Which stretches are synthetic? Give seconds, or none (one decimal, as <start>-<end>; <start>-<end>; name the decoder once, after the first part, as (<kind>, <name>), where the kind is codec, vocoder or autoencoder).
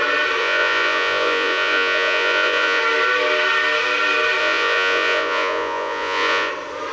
0.4-2.8 (vocoder, Vocos); 4.4-6.5